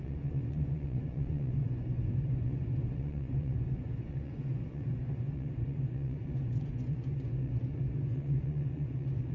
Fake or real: fake